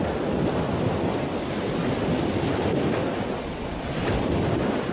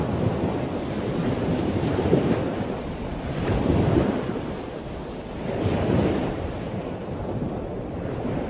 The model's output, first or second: second